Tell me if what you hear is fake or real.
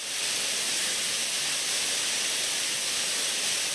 real